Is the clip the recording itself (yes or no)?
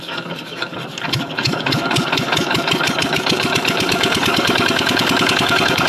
no